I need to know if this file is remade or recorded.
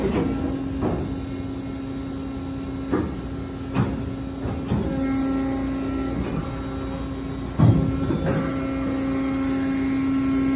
recorded